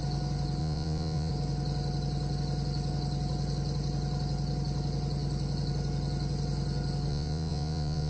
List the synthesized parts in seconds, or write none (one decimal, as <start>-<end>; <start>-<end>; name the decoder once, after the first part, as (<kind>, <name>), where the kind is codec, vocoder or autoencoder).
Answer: 0.6-1.3 (vocoder, Vocos); 7.1-8.1